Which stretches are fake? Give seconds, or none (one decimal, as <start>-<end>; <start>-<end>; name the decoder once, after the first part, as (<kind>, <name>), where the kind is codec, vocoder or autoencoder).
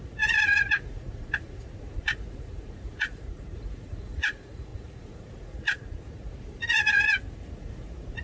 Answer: 0.0-8.2 (vocoder, Vocos)